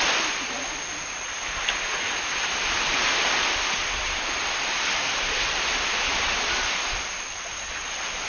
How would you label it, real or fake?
real